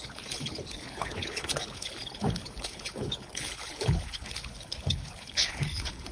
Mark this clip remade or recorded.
remade